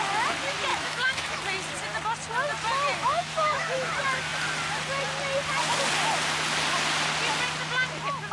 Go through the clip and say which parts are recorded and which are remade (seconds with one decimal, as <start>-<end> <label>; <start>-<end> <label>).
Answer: 0.0-0.7 recorded; 0.7-1.4 remade; 1.4-3.0 recorded; 3.0-3.9 remade; 3.9-8.3 recorded